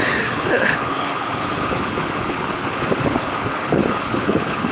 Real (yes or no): no